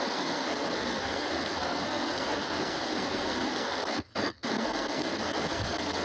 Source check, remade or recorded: remade